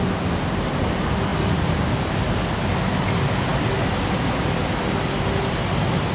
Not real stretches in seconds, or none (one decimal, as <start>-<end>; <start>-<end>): none